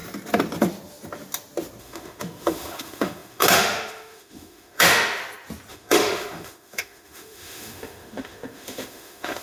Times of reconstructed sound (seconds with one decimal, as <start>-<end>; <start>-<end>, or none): 1.8-5.2; 5.7-9.4